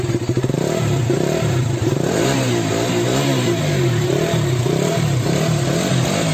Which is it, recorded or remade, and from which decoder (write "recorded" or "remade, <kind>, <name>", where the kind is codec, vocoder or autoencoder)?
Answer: remade, vocoder, BigVGAN v2